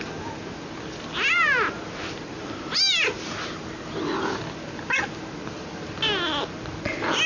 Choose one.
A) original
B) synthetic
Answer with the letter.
A